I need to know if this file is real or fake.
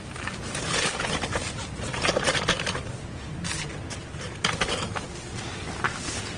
real